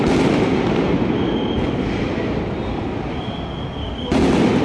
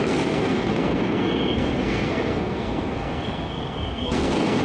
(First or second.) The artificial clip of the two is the second